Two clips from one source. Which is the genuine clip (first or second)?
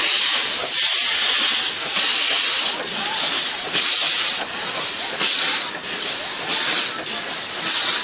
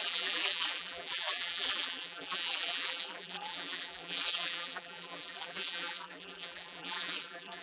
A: first